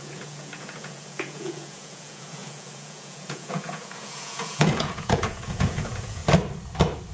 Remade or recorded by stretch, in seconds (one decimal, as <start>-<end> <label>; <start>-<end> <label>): 0.0-6.2 remade; 6.2-7.1 recorded